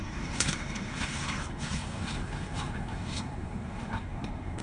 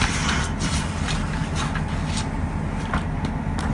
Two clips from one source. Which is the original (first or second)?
second